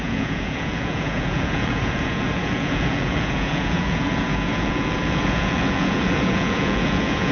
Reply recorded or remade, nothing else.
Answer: remade